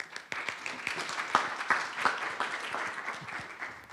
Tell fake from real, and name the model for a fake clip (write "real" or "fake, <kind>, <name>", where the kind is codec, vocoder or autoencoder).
real